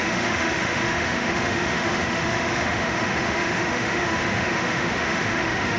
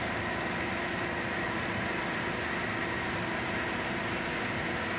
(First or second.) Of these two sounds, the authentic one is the second